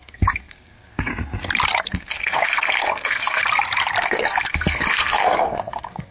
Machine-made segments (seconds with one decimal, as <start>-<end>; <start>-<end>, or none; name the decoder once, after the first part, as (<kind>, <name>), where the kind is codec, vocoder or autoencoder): 0.0-1.1 (codec, SNAC); 1.9-3.4; 4.0-6.1